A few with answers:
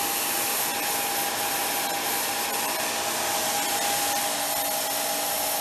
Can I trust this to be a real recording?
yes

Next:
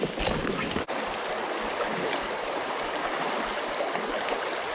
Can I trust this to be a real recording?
yes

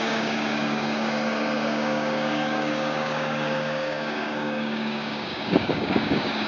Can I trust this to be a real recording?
no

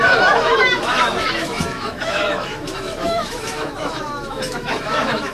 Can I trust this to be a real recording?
no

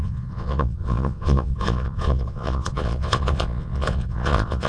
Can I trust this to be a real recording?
no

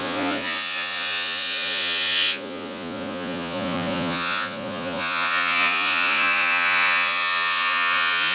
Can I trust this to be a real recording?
no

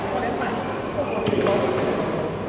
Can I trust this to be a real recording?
yes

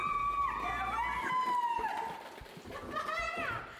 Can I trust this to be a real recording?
yes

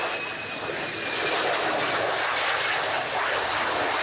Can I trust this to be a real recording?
yes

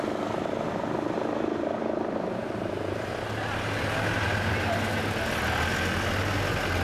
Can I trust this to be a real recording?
yes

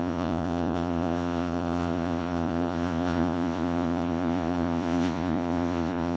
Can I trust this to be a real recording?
no